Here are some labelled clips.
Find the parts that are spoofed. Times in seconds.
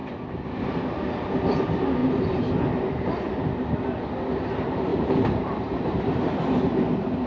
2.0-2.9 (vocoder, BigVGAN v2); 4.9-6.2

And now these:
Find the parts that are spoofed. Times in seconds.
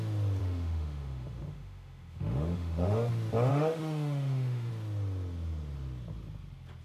0.4-3.1 (autoencoder, DAC-VAE); 3.5-4.7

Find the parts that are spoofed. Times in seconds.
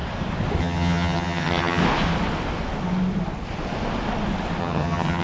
0.6-1.8 (vocoder, HiFi-GAN); 4.6-5.2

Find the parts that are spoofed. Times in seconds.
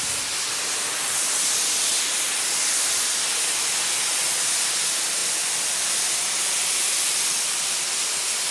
none